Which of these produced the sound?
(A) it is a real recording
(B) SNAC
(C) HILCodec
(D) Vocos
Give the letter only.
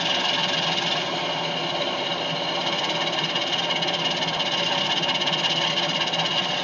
A